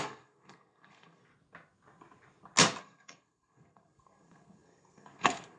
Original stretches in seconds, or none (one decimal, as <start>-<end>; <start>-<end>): 1.3-2.8